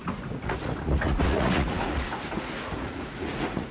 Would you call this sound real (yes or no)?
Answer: no